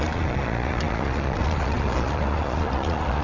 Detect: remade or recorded remade